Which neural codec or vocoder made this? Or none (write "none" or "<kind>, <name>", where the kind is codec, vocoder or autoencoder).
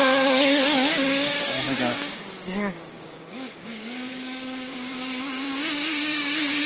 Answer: codec, DAC